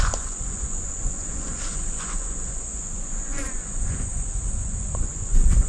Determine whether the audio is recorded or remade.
remade